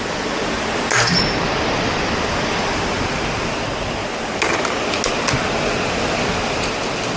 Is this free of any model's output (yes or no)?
yes